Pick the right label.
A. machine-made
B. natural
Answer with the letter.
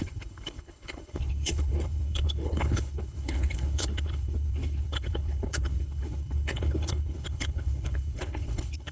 A